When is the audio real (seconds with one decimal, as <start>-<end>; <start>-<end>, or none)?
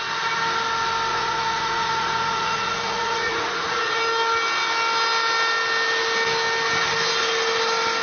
0.0-1.1; 4.0-8.0